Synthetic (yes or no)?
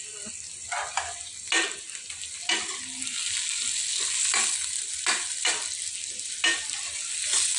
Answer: no